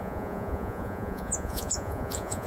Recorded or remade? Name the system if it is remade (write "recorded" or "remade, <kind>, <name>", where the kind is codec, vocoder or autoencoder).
remade, vocoder, Vocos